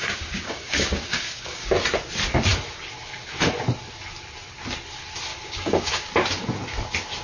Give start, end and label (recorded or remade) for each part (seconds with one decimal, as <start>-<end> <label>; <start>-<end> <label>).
0.0-1.7 remade; 1.7-5.3 recorded; 5.3-6.1 remade; 6.1-7.2 recorded